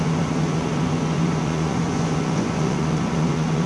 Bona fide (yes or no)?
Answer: no